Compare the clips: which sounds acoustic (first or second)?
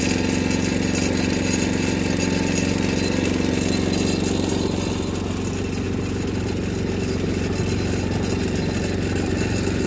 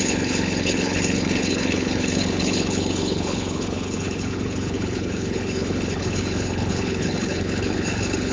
first